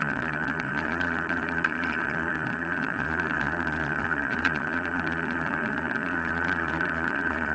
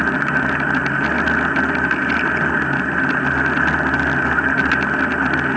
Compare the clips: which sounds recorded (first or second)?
second